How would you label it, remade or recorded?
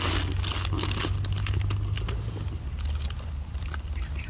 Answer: recorded